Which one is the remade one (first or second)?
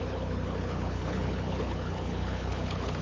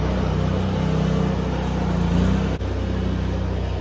first